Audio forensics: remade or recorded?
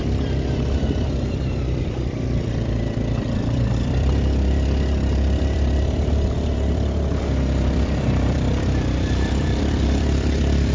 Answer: remade